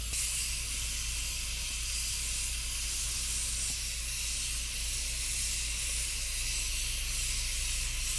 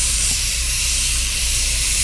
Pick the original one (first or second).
first